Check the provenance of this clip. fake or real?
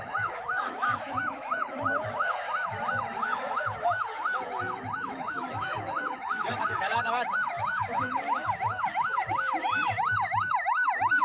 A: fake